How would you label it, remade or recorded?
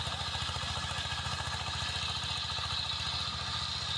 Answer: recorded